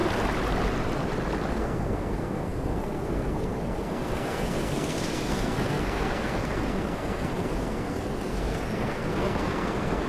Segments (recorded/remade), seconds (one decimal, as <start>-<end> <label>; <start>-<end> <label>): 0.0-1.5 recorded; 1.5-10.1 remade